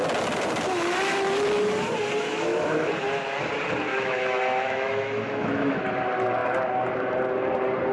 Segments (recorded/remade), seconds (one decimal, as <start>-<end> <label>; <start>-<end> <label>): 0.0-2.2 recorded; 2.2-2.9 remade; 2.9-3.9 recorded; 3.9-5.8 remade; 5.8-7.9 recorded